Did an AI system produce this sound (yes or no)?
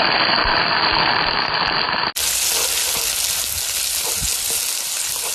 no